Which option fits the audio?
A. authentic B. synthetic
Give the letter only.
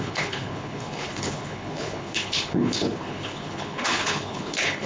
B